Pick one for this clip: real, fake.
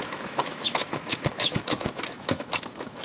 fake